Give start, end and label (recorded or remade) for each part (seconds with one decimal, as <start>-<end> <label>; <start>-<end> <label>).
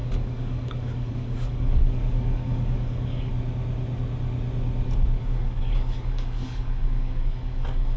0.0-3.3 remade; 3.3-5.2 recorded; 5.2-8.0 remade